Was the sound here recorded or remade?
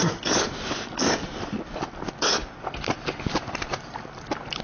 recorded